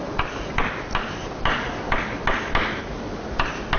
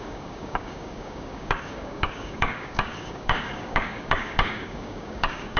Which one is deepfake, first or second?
second